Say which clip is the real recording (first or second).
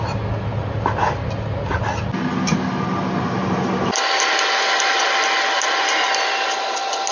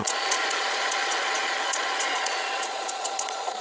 first